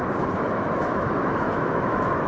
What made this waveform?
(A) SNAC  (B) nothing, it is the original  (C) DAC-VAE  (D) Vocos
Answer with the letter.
C